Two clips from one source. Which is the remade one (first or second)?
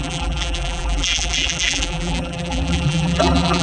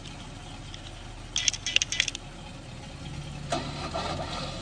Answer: first